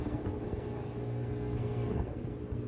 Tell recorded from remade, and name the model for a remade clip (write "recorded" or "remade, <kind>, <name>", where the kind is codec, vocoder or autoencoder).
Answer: remade, codec, SNAC